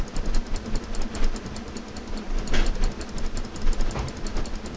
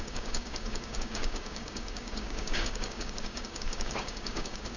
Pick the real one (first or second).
first